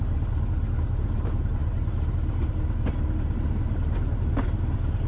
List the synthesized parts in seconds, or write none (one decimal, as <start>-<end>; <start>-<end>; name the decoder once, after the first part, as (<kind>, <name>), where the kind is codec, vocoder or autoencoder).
none